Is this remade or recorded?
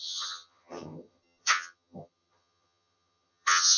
remade